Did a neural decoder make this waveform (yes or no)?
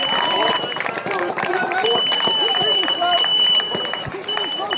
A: yes